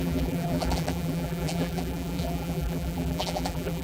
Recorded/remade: remade